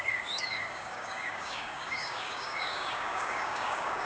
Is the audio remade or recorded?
remade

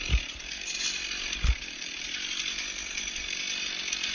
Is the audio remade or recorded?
remade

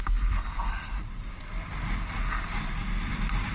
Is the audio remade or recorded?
recorded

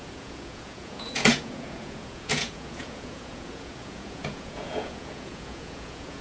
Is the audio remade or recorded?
remade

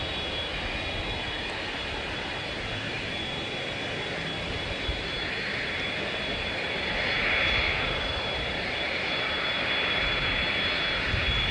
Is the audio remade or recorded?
recorded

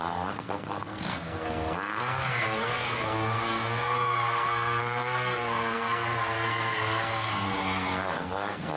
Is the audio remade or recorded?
remade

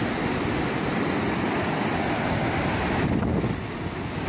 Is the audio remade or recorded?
recorded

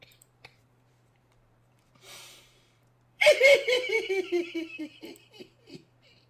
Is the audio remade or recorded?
remade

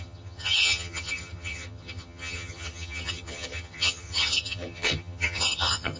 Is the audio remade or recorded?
remade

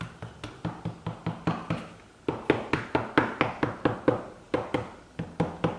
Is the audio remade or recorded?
recorded